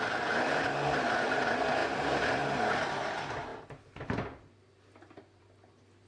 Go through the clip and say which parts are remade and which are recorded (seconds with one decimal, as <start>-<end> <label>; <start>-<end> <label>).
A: 0.0-1.8 recorded; 1.8-2.6 remade; 2.6-6.1 recorded